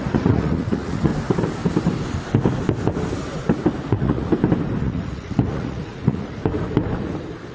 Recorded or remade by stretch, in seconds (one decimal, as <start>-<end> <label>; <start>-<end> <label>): 0.0-1.1 remade; 1.1-3.9 recorded; 3.9-4.3 remade; 4.3-4.8 recorded; 4.8-6.4 remade; 6.4-7.5 recorded